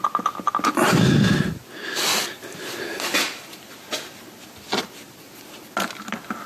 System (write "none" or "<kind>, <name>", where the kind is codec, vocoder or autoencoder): none